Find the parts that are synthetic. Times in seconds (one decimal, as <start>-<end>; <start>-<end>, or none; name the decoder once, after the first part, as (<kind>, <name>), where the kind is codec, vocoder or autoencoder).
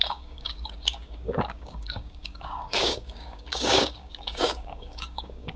0.0-5.6 (codec, DAC)